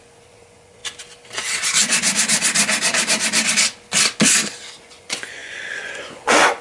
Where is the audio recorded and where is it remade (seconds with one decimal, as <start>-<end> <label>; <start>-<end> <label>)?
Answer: 0.0-0.8 remade; 0.8-4.8 recorded; 4.8-6.6 remade